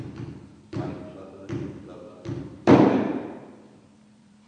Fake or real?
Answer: fake